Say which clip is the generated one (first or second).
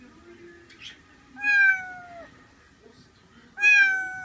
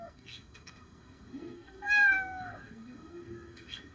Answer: second